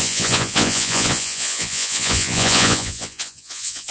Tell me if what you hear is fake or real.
fake